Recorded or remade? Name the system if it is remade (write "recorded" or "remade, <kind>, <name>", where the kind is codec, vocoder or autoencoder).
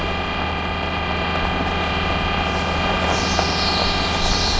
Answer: recorded